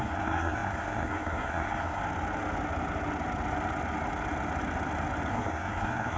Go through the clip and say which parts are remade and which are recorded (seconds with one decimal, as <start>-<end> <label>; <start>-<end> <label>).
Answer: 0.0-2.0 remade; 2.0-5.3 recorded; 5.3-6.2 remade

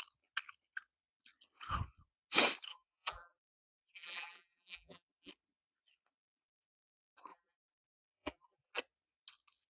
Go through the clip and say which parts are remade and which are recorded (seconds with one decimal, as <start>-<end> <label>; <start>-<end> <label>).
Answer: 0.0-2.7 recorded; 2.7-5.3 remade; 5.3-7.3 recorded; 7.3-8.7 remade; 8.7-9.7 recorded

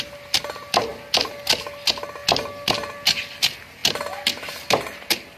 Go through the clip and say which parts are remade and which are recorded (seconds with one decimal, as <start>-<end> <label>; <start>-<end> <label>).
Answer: 0.0-5.4 recorded